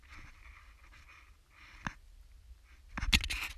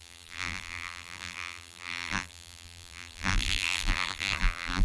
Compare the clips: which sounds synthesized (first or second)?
second